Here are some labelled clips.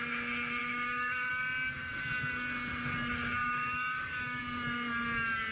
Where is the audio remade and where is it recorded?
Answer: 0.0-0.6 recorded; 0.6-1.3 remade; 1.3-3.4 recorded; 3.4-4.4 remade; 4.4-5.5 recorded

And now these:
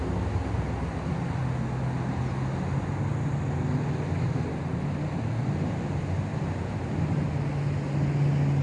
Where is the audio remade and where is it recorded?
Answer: 0.0-8.6 recorded